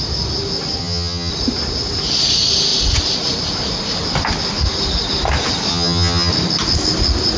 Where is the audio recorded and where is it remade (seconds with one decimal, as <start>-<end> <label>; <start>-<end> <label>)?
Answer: 0.0-0.8 recorded; 0.8-1.3 remade; 1.3-5.7 recorded; 5.7-6.3 remade; 6.3-7.4 recorded